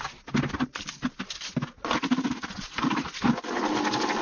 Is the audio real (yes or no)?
yes